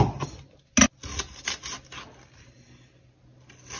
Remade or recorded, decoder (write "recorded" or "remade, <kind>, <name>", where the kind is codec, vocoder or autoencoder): recorded